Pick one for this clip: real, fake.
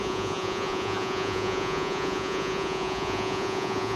fake